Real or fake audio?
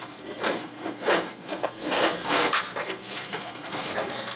fake